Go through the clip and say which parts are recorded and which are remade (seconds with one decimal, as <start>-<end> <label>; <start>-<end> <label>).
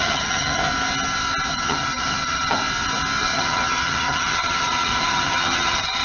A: 0.0-0.6 remade; 0.6-1.5 recorded; 1.5-2.6 remade; 2.6-3.2 recorded; 3.2-6.0 remade